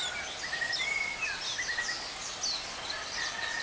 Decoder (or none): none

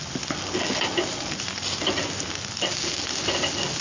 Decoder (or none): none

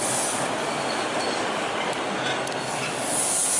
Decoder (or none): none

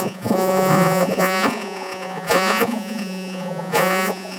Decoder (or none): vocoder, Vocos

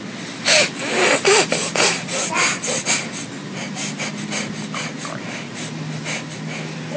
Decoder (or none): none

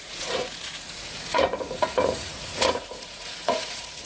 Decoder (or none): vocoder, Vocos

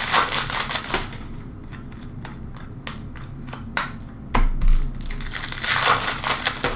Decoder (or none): none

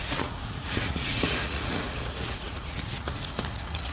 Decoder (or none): vocoder, Vocos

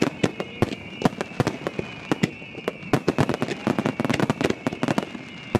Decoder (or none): none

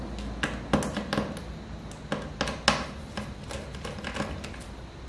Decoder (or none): none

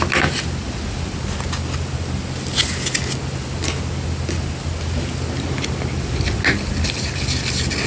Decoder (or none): none